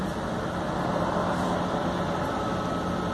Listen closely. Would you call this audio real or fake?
fake